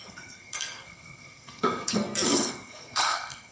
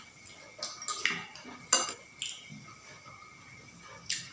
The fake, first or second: first